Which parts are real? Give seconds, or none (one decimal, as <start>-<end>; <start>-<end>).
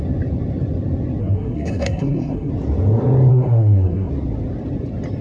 0.0-1.2; 2.5-3.3; 4.1-5.2